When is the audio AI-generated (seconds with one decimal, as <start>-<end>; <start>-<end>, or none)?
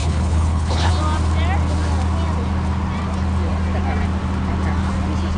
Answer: 0.0-0.9